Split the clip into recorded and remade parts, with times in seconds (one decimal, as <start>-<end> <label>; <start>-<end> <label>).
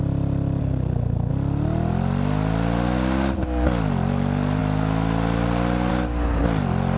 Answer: 0.0-0.6 recorded; 0.6-1.3 remade; 1.3-7.0 recorded